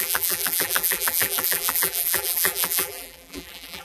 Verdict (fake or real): fake